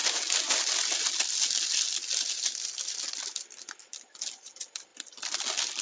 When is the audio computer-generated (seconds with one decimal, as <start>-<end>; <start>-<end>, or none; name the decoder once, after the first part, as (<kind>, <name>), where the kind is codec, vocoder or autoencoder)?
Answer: none